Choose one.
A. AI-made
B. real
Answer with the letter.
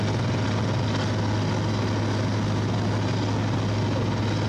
B